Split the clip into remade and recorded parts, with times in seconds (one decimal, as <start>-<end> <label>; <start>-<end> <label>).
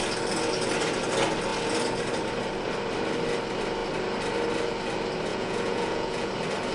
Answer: 0.0-5.3 recorded; 5.3-6.3 remade; 6.3-6.7 recorded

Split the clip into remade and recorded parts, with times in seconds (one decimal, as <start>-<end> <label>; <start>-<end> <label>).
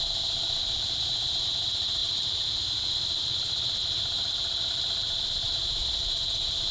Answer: 0.0-6.7 recorded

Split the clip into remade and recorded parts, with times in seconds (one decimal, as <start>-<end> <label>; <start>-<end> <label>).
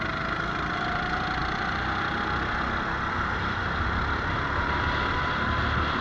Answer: 0.0-6.0 recorded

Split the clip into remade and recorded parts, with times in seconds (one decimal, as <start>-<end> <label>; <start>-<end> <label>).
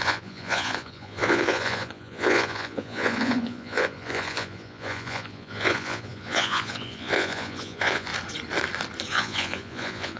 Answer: 0.0-8.1 remade; 8.1-9.1 recorded; 9.1-10.2 remade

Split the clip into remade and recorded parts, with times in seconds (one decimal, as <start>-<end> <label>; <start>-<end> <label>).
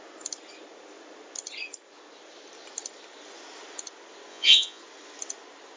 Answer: 0.0-4.3 recorded; 4.3-4.8 remade; 4.8-5.8 recorded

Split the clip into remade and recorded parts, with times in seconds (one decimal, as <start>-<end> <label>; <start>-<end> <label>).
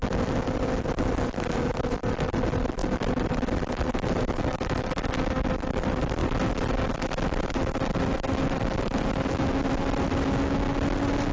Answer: 0.0-11.3 recorded